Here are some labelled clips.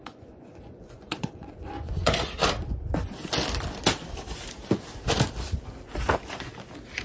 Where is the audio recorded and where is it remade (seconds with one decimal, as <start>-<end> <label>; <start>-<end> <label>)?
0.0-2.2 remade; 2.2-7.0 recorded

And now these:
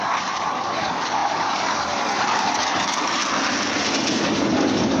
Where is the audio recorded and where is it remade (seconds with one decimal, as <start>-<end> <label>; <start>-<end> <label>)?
0.0-3.2 remade; 3.2-4.1 recorded; 4.1-5.0 remade

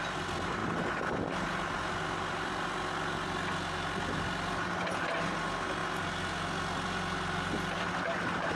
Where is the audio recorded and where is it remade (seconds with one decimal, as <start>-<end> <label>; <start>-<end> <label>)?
0.0-8.6 recorded

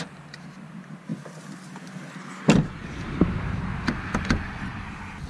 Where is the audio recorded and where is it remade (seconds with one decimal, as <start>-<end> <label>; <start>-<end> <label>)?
0.0-5.3 recorded